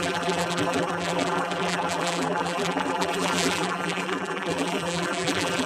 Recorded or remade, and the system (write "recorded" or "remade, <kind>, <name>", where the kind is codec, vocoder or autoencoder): remade, vocoder, BigVGAN v2